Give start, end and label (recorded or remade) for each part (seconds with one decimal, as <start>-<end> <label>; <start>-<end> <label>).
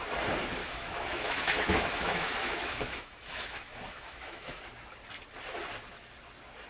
0.0-0.6 recorded; 0.6-4.6 remade; 4.6-6.7 recorded